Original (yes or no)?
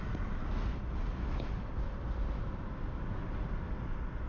yes